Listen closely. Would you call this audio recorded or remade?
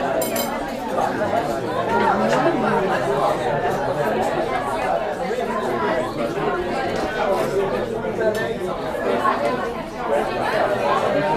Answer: recorded